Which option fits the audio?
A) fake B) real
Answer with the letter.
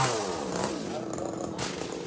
B